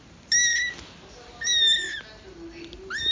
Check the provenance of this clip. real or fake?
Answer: real